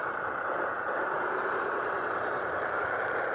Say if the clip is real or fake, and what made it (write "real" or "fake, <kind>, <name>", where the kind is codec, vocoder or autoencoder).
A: fake, vocoder, BigVGAN v2